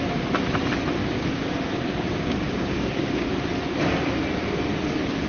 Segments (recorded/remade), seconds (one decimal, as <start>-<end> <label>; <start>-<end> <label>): 0.0-1.0 recorded; 1.0-3.3 remade; 3.3-5.3 recorded